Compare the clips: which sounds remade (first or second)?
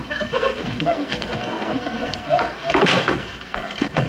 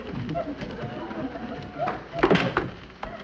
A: first